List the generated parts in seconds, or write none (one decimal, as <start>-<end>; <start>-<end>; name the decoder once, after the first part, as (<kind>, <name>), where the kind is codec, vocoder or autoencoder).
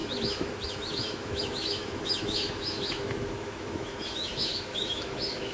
0.0-5.5 (autoencoder, DAC-VAE)